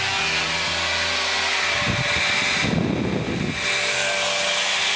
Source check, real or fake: real